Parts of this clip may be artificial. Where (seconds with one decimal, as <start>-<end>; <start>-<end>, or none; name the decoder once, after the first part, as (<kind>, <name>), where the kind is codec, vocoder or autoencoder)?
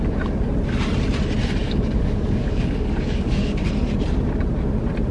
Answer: 1.6-3.7 (codec, DAC)